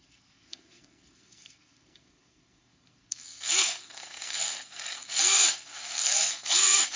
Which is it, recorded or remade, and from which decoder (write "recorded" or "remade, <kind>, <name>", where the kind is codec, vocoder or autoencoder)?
remade, codec, SNAC